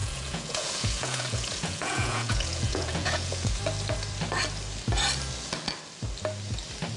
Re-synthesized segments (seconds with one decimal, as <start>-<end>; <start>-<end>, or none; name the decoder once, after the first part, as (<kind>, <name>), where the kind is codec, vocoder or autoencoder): 0.0-3.6 (vocoder, Vocos)